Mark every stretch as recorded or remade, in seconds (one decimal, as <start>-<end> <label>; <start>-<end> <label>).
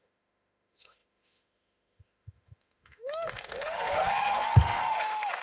0.0-5.4 remade